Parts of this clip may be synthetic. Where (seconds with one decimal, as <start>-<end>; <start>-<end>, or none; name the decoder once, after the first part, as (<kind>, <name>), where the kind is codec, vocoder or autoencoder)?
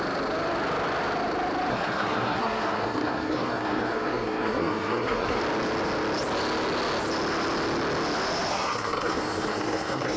1.7-5.4 (codec, SNAC); 8.5-10.2